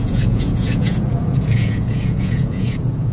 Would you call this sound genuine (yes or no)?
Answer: no